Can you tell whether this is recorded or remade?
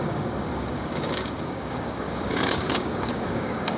remade